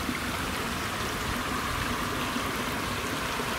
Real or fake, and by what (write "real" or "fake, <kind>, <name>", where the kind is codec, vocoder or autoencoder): real